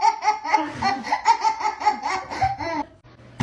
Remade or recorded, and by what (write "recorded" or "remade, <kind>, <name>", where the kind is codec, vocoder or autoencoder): recorded